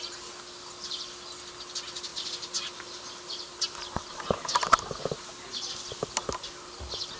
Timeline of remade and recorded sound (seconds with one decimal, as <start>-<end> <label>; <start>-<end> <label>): 0.0-7.2 recorded